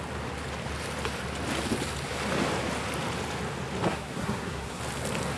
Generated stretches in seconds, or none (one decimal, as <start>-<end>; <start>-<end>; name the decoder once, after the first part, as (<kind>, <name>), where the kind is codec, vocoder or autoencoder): 3.9-4.8 (codec, SNAC)